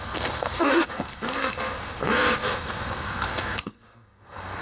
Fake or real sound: fake